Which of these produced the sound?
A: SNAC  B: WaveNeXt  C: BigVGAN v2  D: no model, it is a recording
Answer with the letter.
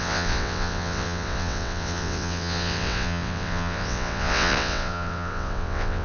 B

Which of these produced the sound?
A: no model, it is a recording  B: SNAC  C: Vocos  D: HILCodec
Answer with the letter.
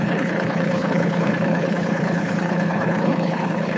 D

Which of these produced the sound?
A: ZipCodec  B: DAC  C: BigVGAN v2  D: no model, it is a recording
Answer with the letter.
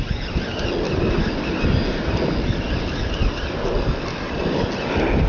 D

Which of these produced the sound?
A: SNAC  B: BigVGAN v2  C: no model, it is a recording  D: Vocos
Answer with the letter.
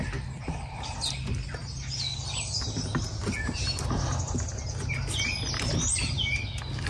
C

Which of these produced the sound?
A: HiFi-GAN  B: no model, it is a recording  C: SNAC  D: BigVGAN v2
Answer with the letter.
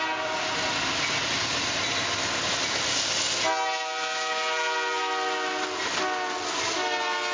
B